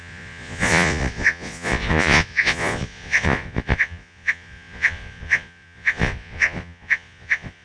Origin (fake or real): fake